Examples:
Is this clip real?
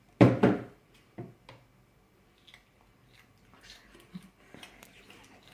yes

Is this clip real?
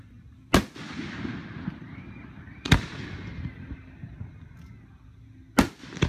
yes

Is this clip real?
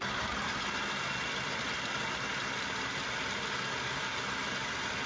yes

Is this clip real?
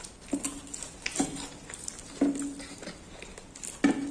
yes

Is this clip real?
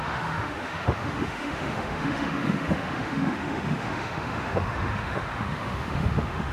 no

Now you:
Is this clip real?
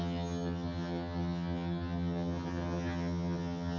no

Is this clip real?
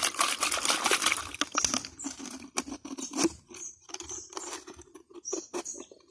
yes